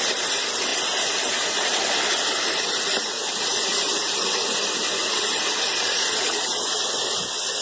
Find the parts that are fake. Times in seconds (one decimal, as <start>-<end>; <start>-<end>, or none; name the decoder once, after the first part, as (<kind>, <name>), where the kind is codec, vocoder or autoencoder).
none

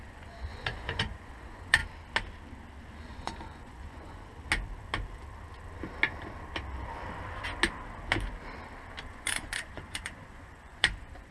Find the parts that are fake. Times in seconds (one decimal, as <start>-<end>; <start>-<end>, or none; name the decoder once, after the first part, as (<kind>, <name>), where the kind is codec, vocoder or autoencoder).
0.0-1.8 (vocoder, Vocos); 2.9-4.3; 9.1-11.3